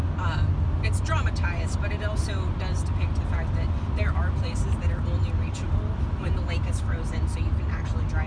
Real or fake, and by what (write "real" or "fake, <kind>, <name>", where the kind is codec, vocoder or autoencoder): real